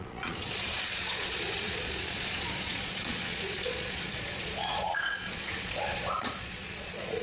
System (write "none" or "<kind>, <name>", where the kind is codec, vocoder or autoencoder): vocoder, Vocos